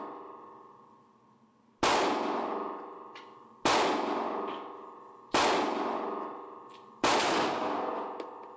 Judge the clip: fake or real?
real